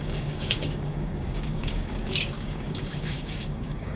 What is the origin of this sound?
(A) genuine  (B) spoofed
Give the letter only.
B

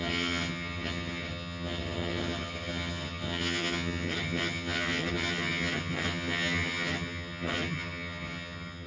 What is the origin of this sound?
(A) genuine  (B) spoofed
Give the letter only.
B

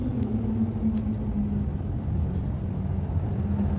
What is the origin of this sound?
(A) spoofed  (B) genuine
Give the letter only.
B